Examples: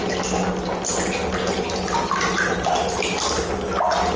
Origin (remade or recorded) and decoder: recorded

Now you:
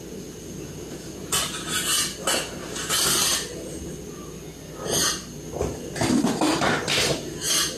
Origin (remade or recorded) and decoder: recorded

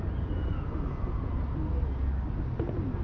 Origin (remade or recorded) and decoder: recorded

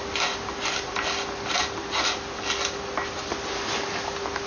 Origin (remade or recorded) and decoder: recorded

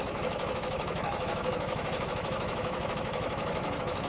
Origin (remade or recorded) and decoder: remade, autoencoder, DAC-VAE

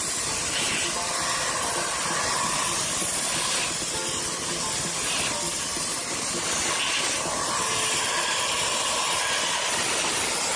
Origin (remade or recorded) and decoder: recorded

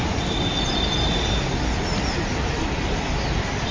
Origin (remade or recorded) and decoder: recorded